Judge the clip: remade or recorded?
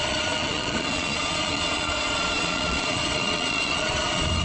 remade